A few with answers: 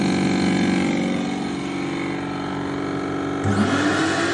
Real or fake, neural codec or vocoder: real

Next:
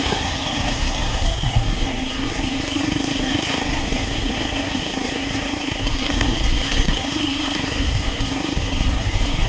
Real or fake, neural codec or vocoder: fake, codec, SNAC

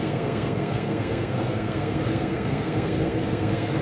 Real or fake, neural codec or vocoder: fake, codec, SNAC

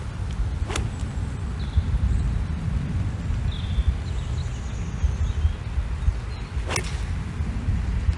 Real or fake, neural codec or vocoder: real